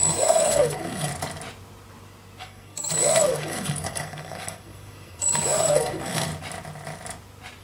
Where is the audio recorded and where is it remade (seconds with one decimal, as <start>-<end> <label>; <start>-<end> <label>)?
0.0-1.1 remade; 1.1-2.4 recorded; 2.4-6.3 remade; 6.3-7.6 recorded